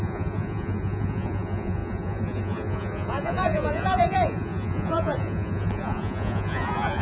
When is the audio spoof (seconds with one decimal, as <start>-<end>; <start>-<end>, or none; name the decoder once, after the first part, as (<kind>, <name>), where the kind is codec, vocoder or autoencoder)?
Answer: 0.0-7.0 (vocoder, Vocos)